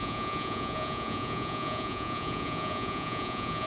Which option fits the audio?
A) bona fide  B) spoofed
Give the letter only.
B